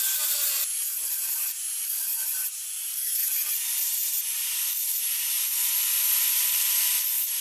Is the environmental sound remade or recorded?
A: remade